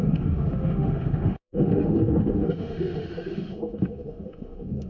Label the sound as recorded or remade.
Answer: remade